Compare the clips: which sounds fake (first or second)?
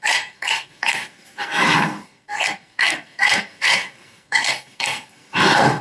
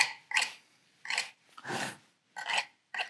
first